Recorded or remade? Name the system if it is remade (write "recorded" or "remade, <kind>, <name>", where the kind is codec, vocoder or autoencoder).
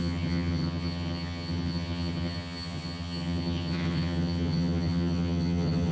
remade, vocoder, HiFi-GAN